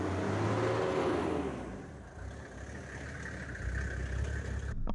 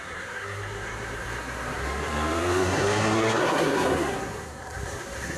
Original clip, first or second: first